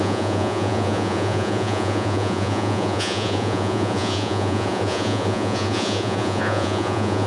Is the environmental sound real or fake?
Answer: fake